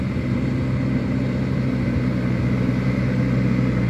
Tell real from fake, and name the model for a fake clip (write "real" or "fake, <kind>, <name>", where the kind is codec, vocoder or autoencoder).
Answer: real